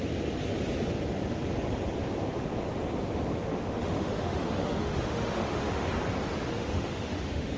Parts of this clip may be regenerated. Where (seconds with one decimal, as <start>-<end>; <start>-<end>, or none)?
3.4-5.9; 6.5-7.6